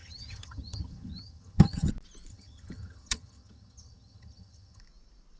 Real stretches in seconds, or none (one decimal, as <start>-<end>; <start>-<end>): 1.9-2.3; 4.8-5.4